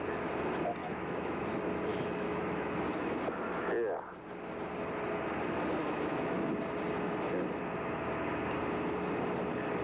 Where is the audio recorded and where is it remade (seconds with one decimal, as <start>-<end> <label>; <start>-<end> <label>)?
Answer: 0.0-0.8 recorded; 0.8-1.4 remade; 1.4-1.9 recorded; 1.9-3.2 remade; 3.2-5.8 recorded; 5.8-6.5 remade; 6.5-9.8 recorded